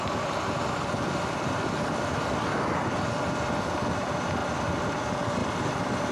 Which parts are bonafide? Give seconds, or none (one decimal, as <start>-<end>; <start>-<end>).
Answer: 0.0-6.1